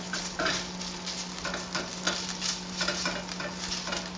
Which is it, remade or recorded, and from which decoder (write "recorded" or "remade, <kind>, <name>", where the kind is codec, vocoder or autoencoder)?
recorded